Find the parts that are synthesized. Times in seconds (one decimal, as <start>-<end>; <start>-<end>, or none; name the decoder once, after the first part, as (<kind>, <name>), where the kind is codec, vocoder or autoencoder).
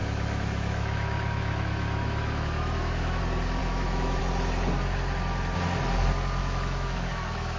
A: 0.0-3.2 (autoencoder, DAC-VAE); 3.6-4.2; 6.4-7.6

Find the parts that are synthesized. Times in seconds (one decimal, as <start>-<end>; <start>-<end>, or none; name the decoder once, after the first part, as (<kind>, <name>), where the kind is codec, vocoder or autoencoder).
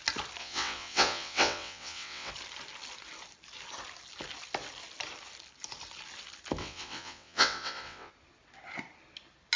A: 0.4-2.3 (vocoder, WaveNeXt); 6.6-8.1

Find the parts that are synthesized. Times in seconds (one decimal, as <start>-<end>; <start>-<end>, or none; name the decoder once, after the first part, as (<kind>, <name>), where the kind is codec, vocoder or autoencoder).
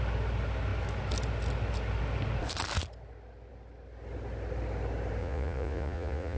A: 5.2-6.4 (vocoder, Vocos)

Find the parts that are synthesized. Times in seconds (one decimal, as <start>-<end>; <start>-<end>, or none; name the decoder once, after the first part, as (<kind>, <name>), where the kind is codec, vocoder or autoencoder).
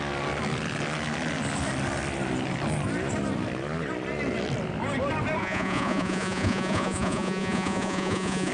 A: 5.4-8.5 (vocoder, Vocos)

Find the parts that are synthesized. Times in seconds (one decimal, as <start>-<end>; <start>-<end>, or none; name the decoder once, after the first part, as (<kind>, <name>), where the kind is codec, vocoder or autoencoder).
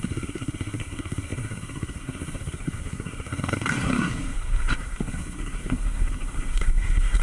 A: 0.0-7.2 (codec, SNAC)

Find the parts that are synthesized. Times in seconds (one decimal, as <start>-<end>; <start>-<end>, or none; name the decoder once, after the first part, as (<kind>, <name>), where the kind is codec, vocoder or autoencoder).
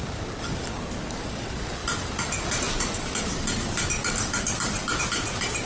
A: none